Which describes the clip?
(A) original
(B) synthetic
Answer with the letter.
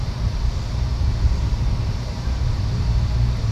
B